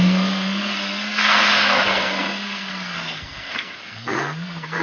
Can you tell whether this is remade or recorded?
remade